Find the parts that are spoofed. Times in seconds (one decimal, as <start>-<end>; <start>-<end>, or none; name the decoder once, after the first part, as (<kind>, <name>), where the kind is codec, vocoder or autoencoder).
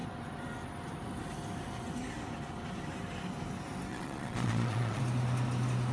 3.9-5.0 (vocoder, Vocos)